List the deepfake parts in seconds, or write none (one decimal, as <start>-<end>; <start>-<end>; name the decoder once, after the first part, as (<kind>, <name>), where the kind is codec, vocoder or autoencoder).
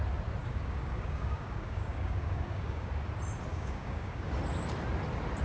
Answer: 0.4-2.9 (codec, DAC); 3.5-4.3